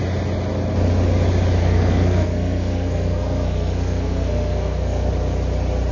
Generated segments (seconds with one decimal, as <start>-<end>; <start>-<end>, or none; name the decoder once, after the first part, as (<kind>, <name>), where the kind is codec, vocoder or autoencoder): 1.6-5.1 (codec, SNAC)